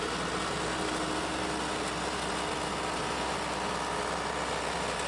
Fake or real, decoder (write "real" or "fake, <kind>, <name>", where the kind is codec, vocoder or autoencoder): real